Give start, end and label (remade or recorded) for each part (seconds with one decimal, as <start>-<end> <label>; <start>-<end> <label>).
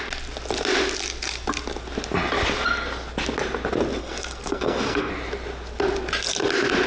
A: 0.0-4.0 recorded; 4.0-5.1 remade; 5.1-6.9 recorded